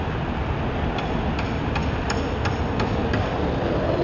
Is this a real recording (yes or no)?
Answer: yes